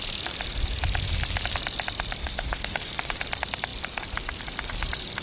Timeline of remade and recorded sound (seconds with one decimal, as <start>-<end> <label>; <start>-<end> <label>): 0.0-2.2 recorded; 2.2-2.9 remade; 2.9-5.2 recorded